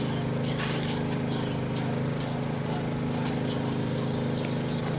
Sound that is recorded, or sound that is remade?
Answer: recorded